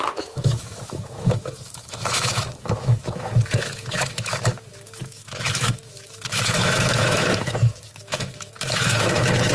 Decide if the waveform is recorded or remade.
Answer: remade